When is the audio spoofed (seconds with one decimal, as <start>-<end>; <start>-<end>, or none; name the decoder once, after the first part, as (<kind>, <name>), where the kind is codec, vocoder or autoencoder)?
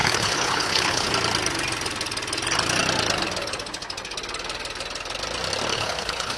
0.0-1.1 (codec, HILCodec); 5.7-6.4